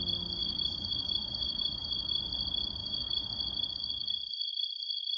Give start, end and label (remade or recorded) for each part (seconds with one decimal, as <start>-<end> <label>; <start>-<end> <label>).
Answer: 0.0-0.4 recorded; 0.4-2.2 remade; 2.2-2.8 recorded; 2.8-3.3 remade; 3.3-5.2 recorded